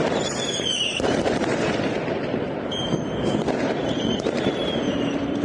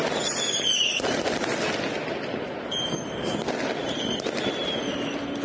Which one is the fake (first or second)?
first